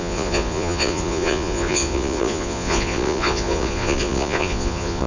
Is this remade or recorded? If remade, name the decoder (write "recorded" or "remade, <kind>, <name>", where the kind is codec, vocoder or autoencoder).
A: remade, vocoder, Vocos